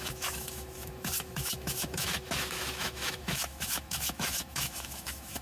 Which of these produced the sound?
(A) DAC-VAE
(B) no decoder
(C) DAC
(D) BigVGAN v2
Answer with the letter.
A